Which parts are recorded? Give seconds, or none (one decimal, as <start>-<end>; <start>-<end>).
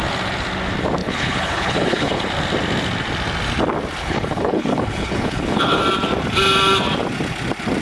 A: 0.0-1.0; 2.3-4.0; 5.8-7.8